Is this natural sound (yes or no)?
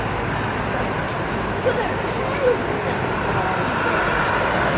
yes